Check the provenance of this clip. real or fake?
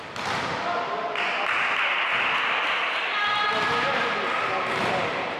real